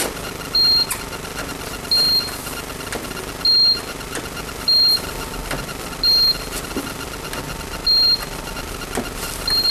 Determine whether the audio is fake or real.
real